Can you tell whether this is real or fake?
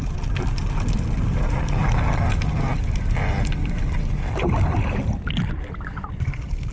real